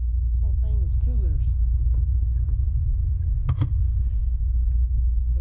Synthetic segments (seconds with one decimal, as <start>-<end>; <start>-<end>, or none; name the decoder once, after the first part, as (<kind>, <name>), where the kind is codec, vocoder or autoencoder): none

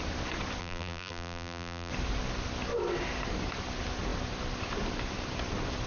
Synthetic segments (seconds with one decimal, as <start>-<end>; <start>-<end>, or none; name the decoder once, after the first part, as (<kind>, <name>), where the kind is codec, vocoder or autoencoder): 0.6-1.9 (vocoder, BigVGAN v2)